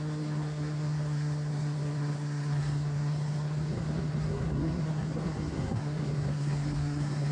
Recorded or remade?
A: remade